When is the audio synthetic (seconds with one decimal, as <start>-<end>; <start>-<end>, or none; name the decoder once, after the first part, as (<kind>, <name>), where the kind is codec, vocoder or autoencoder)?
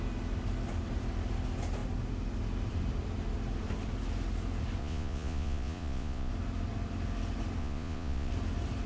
4.8-6.3 (vocoder, Vocos); 7.6-8.3